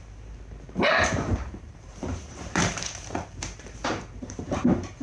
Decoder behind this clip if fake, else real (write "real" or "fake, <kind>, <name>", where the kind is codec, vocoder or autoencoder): fake, vocoder, BigVGAN v2